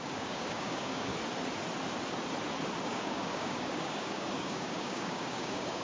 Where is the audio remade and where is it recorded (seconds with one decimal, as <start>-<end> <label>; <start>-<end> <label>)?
0.0-1.1 remade; 1.1-2.8 recorded; 2.8-5.8 remade